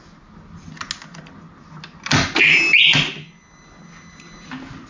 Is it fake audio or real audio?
real